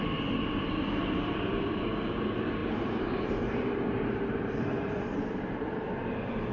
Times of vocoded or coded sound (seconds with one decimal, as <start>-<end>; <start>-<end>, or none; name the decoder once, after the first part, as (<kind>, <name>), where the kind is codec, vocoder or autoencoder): 2.6-5.9 (vocoder, BigVGAN v2)